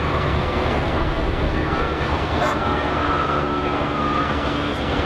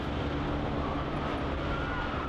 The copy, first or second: first